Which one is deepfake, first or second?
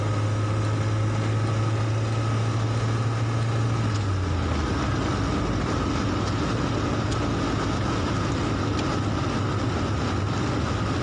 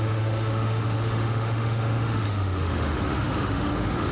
second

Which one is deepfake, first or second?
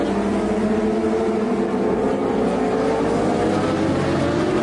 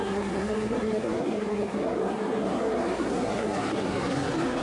second